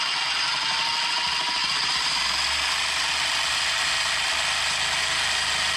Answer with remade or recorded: recorded